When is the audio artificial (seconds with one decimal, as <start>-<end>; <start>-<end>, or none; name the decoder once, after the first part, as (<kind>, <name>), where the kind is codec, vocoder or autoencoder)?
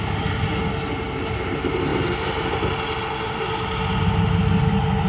none